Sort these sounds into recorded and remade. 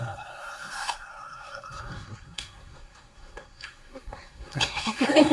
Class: remade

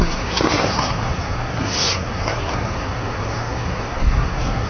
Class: remade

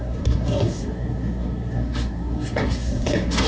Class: remade